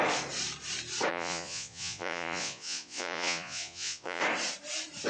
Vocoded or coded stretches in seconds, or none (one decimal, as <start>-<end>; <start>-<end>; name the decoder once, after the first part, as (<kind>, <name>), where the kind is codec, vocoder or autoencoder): 1.1-4.2 (vocoder, Vocos)